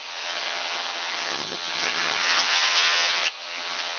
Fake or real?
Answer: fake